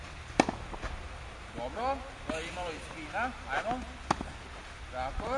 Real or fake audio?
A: real